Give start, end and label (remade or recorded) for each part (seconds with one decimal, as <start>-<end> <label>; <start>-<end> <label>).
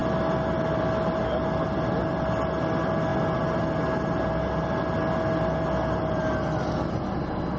0.0-7.6 recorded